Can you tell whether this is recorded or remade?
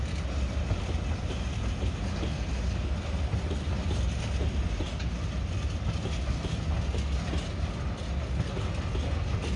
recorded